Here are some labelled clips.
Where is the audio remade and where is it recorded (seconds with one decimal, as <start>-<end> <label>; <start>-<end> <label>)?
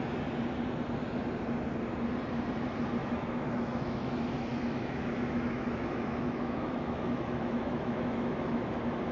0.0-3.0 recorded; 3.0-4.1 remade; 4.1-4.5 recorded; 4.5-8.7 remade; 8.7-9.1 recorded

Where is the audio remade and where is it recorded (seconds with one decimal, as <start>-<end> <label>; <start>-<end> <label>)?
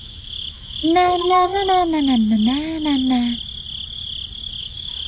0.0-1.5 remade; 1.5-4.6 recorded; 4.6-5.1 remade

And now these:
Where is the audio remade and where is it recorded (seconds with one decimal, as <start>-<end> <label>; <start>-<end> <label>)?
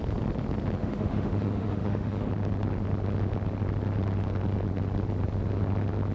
0.0-0.8 recorded; 0.8-2.3 remade; 2.3-6.1 recorded